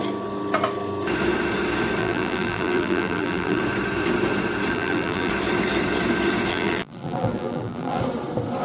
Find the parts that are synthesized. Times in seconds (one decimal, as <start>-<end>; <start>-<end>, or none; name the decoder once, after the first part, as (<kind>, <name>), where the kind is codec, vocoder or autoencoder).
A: 2.0-3.6 (vocoder, BigVGAN v2); 4.7-5.3; 6.5-8.0